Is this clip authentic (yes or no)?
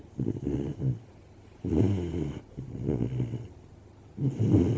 yes